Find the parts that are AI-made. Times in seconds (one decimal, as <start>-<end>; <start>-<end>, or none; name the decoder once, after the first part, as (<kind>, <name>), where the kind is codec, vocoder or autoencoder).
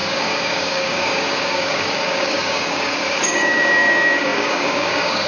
0.0-5.3 (codec, DAC)